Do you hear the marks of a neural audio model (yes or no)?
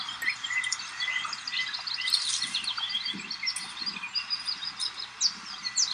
no